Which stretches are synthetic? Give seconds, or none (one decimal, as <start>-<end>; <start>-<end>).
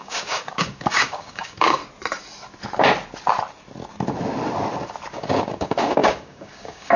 0.0-1.8; 5.1-7.0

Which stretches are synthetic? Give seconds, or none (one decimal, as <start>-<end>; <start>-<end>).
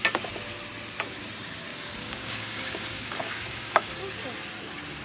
1.7-3.9